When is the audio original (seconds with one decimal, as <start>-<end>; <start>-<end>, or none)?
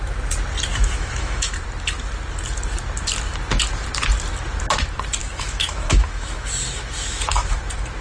0.0-0.7; 1.5-5.2; 7.6-8.0